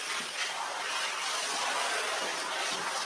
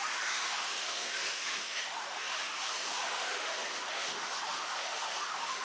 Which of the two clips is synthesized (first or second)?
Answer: second